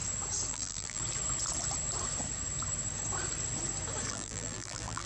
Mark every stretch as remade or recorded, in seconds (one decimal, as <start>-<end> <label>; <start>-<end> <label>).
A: 0.0-0.5 recorded; 0.5-1.0 remade; 1.0-4.1 recorded; 4.1-5.1 remade